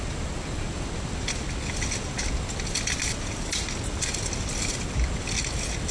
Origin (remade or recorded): recorded